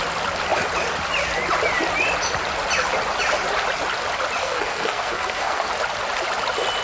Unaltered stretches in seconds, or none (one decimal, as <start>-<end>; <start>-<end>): 0.0-4.4; 5.7-6.8